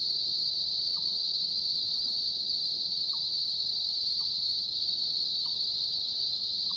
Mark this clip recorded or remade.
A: remade